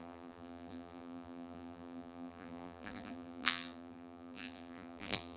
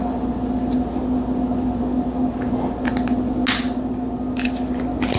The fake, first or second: first